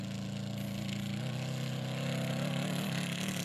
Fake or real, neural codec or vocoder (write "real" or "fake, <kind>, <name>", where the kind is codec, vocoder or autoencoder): real